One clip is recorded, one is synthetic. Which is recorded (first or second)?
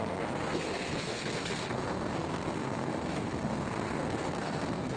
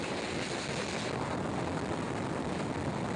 second